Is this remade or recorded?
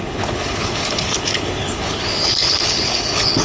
remade